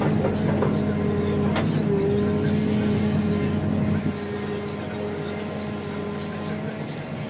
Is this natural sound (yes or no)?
yes